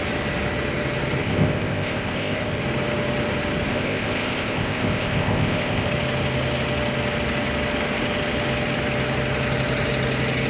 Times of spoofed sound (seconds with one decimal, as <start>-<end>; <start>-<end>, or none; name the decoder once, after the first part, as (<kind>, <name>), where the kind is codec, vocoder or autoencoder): 1.2-2.6 (codec, ZipCodec); 3.7-5.9